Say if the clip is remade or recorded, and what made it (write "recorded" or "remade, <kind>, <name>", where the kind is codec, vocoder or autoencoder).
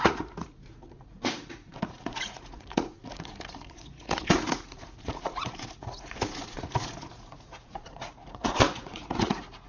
remade, vocoder, Vocos